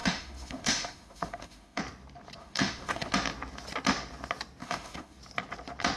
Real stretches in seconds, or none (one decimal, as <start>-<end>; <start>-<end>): 1.8-2.4; 3.1-4.6; 5.2-6.0